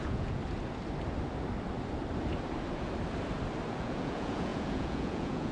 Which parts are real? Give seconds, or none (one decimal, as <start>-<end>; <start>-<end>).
0.4-3.7